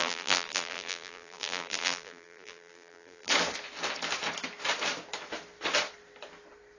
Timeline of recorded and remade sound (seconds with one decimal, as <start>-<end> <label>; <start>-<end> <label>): 0.0-3.3 remade; 3.3-6.8 recorded